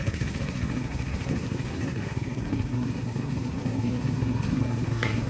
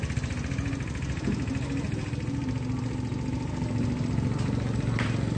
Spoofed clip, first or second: first